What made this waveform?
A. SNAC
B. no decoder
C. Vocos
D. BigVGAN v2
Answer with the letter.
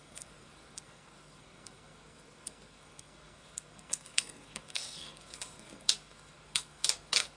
A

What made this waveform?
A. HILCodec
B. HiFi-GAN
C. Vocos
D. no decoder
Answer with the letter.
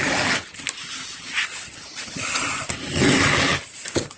D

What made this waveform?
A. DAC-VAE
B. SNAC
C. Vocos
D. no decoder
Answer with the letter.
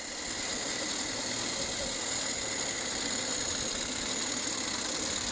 D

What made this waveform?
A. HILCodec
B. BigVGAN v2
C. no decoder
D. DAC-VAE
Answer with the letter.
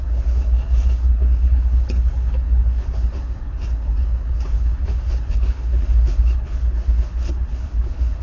A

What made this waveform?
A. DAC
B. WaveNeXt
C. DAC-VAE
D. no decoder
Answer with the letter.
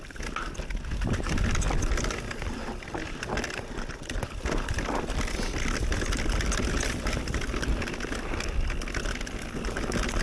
D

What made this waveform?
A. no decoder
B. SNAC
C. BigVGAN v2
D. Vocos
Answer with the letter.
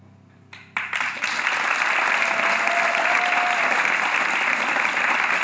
A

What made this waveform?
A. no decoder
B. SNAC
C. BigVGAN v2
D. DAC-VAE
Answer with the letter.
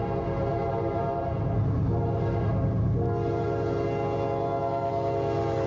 A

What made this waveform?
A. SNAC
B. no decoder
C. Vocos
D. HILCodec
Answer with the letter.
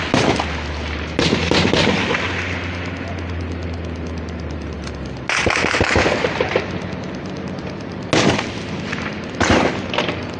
B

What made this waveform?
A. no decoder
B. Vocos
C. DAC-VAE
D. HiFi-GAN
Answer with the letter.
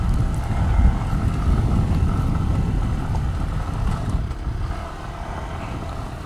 A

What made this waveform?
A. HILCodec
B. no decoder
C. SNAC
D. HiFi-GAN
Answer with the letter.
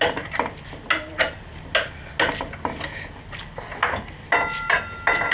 B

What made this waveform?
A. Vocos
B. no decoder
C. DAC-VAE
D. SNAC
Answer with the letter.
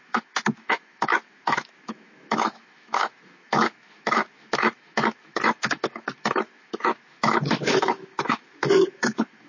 C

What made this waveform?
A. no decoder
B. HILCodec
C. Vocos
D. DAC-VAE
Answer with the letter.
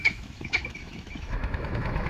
D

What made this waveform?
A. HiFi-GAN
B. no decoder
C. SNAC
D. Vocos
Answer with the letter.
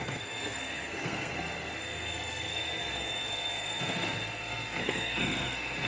C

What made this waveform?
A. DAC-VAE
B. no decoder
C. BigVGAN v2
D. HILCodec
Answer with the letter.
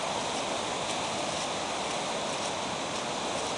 B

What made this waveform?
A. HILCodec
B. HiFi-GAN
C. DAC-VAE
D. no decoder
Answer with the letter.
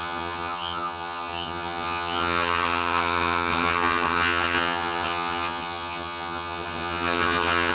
B